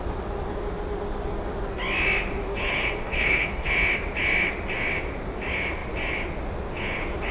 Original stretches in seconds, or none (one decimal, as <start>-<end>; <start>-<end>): 0.0-2.5; 3.7-7.3